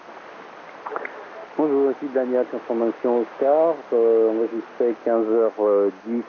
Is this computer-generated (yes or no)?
no